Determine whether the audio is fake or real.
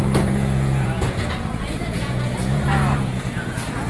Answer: fake